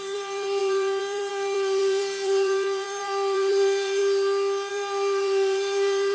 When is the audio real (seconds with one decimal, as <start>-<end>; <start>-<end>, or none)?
4.0-4.7

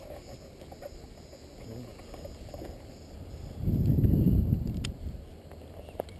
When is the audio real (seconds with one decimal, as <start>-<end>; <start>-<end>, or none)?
0.0-6.2

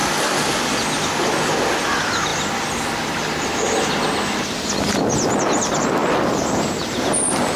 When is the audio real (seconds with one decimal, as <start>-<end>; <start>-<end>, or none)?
0.0-7.6

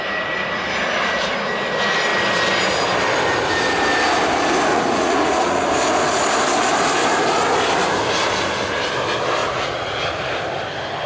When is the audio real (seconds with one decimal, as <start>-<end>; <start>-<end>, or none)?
0.0-4.7; 5.7-9.4; 10.0-11.1

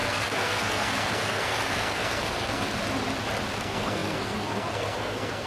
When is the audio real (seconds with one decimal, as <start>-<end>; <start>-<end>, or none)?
2.8-3.6

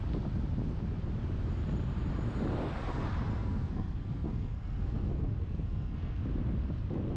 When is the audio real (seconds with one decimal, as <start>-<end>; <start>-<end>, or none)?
0.0-3.3; 6.2-7.2

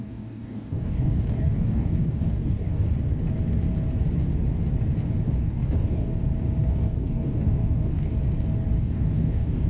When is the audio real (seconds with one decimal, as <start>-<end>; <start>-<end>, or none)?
2.9-5.4; 6.1-6.6; 8.1-8.8